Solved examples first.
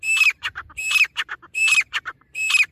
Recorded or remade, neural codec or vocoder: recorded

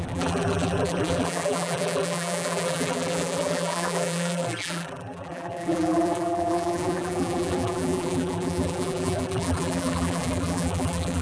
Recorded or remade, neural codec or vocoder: remade, vocoder, BigVGAN v2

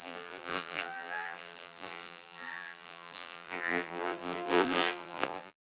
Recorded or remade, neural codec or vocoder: remade, vocoder, BigVGAN v2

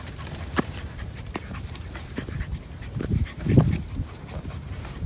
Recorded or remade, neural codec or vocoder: remade, vocoder, BigVGAN v2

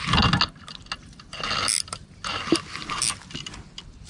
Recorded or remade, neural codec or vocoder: recorded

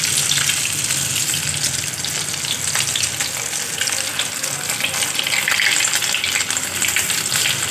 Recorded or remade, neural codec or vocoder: recorded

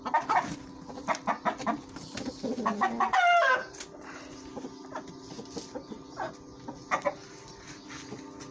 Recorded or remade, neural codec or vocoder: recorded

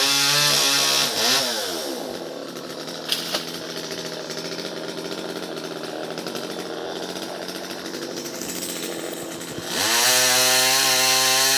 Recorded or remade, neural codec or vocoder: recorded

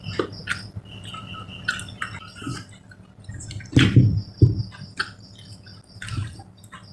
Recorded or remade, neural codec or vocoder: recorded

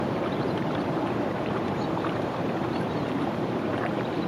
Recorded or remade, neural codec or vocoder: remade, vocoder, BigVGAN v2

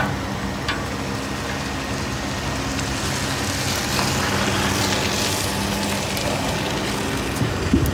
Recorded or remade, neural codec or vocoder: recorded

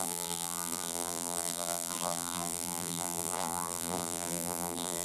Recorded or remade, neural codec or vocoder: remade, vocoder, BigVGAN v2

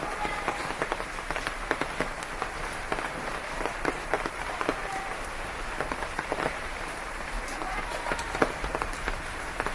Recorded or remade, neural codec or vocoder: remade, vocoder, BigVGAN v2